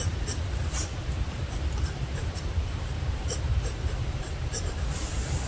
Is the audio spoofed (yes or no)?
yes